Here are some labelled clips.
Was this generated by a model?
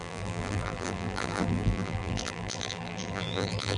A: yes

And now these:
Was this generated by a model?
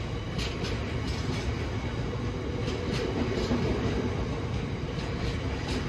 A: no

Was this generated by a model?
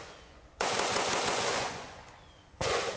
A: yes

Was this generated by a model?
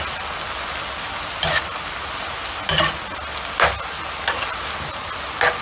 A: no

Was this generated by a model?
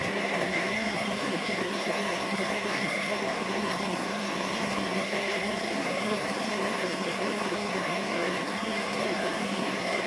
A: yes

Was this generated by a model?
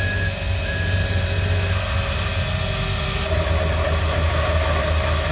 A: no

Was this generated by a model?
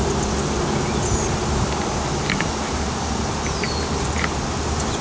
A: no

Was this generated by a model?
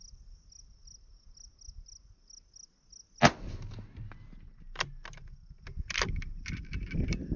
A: no